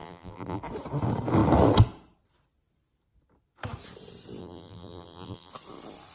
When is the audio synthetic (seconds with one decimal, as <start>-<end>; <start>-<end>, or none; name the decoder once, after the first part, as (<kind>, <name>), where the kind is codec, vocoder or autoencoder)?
0.0-0.6 (vocoder, BigVGAN v2); 4.4-5.5